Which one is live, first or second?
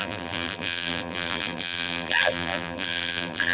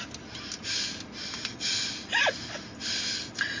second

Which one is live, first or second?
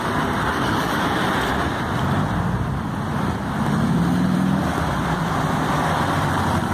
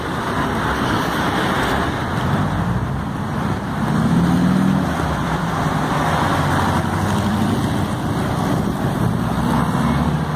second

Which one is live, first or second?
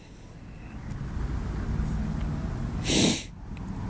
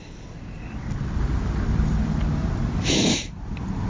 first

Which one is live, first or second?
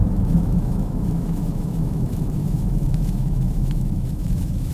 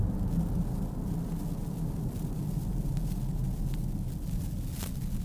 second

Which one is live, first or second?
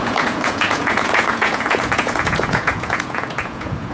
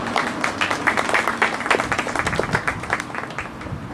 second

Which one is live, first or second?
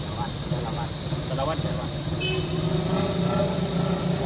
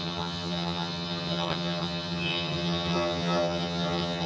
first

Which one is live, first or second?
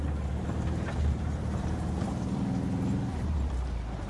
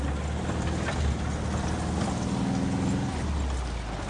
second